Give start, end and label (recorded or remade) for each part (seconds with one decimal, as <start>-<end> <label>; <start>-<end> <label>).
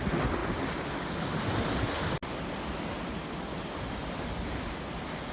0.0-5.3 recorded